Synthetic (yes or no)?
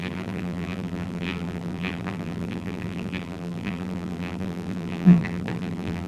yes